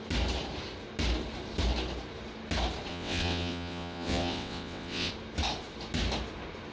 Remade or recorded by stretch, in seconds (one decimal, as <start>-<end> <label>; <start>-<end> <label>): 0.0-2.9 recorded; 2.9-5.1 remade; 5.1-6.7 recorded